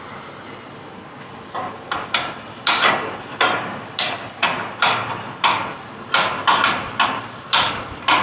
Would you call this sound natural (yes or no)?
yes